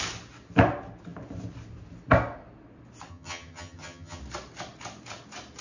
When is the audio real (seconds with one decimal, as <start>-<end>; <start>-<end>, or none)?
0.0-3.1; 4.2-5.6

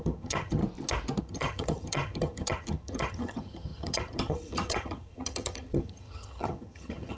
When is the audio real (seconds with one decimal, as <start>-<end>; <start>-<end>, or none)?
0.6-1.2